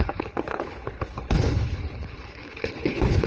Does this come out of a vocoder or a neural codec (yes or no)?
yes